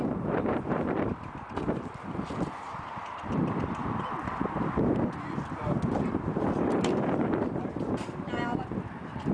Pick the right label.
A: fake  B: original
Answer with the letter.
A